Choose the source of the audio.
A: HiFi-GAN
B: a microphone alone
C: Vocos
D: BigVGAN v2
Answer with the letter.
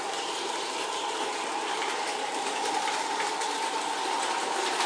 D